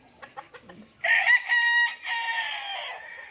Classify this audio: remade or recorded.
recorded